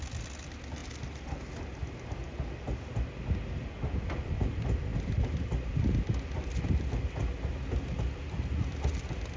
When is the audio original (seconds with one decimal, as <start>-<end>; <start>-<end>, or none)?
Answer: 0.0-9.4